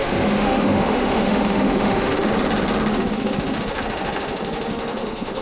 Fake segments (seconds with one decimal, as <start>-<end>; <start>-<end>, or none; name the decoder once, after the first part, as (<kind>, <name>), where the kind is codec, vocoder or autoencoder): 0.0-2.3 (autoencoder, DAC-VAE); 2.9-5.4